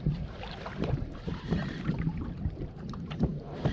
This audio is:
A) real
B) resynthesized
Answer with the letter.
B